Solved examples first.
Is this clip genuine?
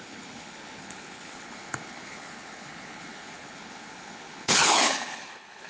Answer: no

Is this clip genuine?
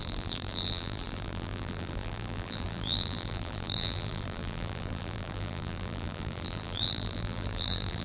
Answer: no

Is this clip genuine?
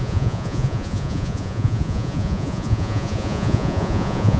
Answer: no